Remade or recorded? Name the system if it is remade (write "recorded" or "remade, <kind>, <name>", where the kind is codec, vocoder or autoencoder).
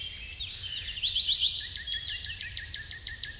recorded